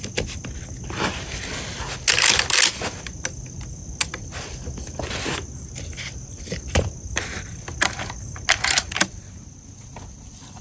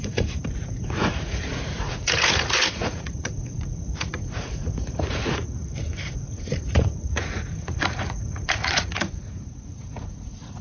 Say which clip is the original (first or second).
first